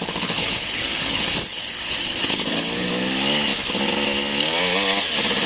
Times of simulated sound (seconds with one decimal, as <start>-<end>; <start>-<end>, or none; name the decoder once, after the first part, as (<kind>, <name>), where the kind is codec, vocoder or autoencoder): 0.0-2.9 (codec, HILCodec)